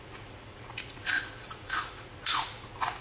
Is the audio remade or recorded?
remade